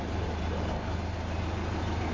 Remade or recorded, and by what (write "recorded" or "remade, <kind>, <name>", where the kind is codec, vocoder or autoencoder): recorded